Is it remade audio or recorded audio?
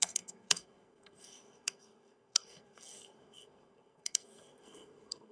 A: remade